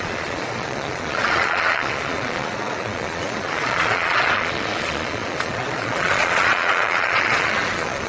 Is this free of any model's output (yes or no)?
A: no